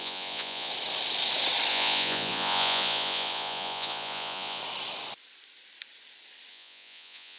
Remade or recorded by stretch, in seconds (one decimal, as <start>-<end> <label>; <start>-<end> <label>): 0.0-0.7 remade; 0.7-1.7 recorded; 1.7-4.6 remade; 4.6-6.5 recorded; 6.5-7.4 remade